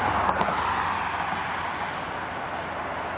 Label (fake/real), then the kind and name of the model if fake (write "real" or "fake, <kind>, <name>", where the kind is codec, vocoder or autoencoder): real